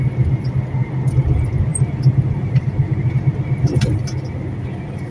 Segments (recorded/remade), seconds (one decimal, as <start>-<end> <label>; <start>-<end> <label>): 0.0-1.7 recorded; 1.7-3.1 remade; 3.1-5.1 recorded